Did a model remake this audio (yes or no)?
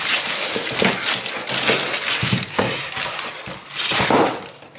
no